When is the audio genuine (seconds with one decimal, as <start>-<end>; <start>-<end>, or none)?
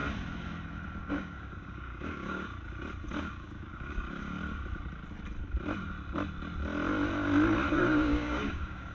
0.0-1.1; 2.5-3.2; 4.4-7.7